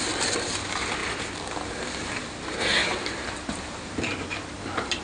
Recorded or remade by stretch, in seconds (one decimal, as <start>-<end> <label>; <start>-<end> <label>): 0.0-5.0 recorded